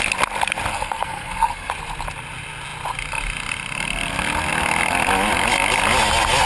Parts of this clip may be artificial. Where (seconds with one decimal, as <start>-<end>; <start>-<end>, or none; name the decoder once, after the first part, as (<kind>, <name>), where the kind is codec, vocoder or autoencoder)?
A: 0.7-1.7 (codec, SNAC)